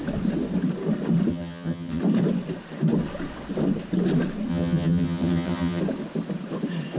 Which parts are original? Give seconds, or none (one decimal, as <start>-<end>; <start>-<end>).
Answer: 0.0-1.3; 2.0-4.5; 5.8-7.0